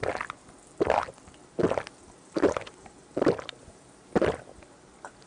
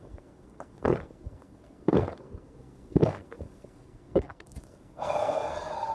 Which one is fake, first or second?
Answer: second